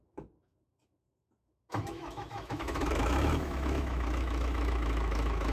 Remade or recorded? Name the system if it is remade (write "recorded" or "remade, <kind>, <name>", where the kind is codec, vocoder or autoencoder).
remade, autoencoder, DAC-VAE